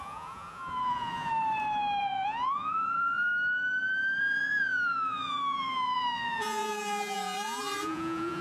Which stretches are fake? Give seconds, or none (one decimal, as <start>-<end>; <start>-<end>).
0.0-1.3; 2.0-3.3; 4.2-8.4